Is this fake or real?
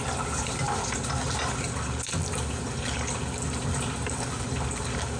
real